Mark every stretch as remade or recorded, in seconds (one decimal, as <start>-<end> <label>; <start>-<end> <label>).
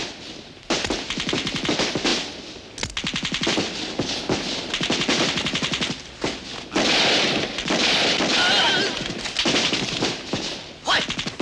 0.0-11.4 recorded